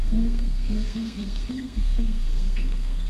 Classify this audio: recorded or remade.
remade